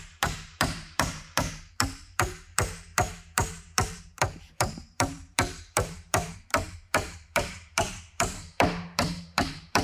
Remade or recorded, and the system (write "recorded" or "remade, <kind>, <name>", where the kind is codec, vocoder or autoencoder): remade, vocoder, BigVGAN v2